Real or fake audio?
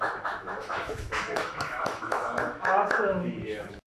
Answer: fake